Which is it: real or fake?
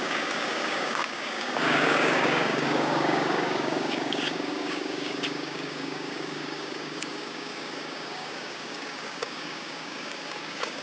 fake